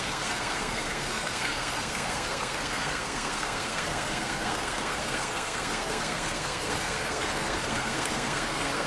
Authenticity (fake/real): fake